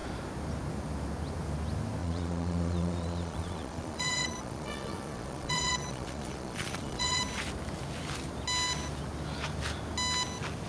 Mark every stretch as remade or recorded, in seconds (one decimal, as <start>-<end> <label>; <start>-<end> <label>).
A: 0.0-2.0 recorded; 2.0-7.2 remade; 7.2-10.7 recorded